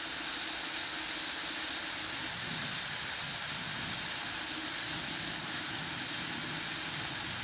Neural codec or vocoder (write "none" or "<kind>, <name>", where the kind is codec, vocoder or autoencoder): none